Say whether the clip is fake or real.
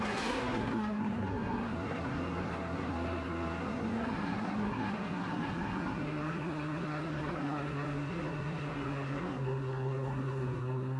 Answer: fake